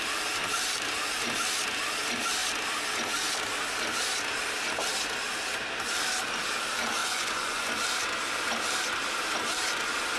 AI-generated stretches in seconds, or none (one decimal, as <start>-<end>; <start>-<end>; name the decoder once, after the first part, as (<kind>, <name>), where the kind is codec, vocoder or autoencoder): 7.0-7.7 (vocoder, Vocos)